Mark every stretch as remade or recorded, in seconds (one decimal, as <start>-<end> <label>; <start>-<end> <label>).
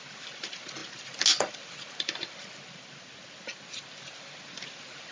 0.0-5.1 recorded